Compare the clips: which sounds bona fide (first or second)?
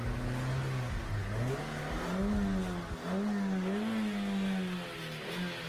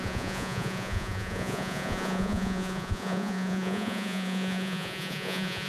first